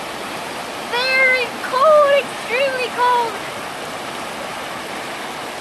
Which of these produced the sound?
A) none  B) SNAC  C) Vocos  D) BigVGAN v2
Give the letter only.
A